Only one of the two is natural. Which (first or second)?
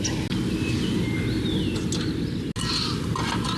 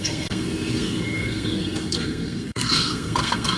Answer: first